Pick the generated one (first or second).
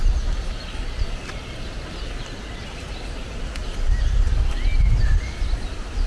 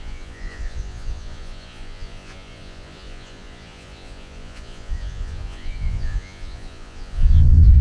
second